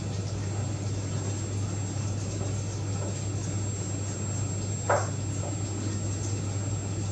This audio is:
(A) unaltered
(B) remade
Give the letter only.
A